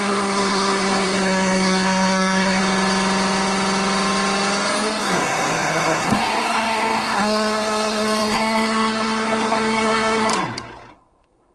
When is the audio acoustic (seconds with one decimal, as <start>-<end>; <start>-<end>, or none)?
2.6-5.0; 10.3-10.9